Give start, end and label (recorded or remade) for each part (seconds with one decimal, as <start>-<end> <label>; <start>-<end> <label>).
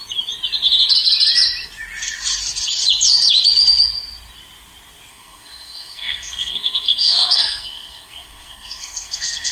0.0-5.1 recorded; 5.1-9.5 remade